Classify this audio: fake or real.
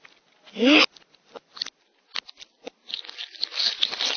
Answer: real